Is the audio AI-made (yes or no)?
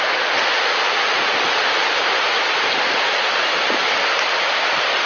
no